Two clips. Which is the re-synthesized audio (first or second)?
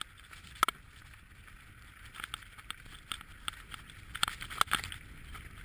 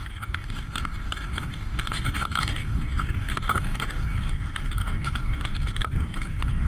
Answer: second